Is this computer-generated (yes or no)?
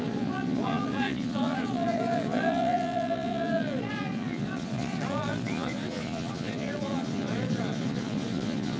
yes